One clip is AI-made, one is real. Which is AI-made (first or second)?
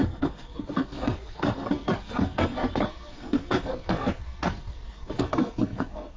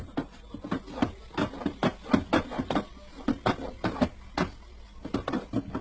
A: first